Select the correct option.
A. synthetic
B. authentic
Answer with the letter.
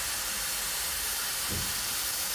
B